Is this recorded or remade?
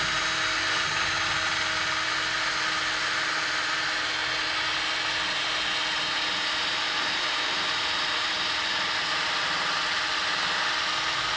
recorded